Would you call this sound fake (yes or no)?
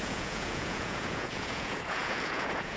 yes